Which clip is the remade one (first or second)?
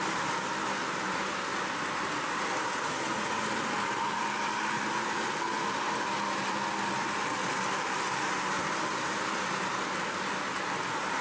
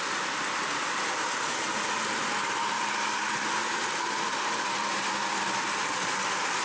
second